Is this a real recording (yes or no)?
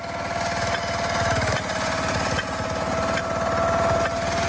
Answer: yes